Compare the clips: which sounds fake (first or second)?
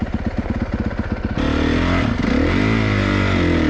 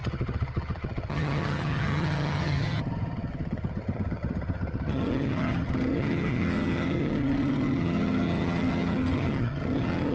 second